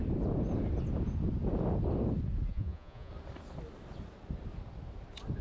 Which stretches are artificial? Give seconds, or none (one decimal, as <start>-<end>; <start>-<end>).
2.5-3.1